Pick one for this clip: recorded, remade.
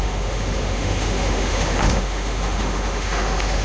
remade